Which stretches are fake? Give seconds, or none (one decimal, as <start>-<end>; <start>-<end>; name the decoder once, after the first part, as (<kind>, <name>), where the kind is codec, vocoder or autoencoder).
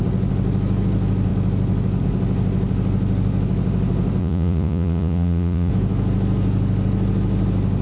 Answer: 4.2-5.7 (vocoder, Vocos)